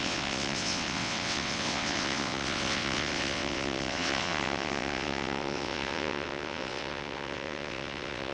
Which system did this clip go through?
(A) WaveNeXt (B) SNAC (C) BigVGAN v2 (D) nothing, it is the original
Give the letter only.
A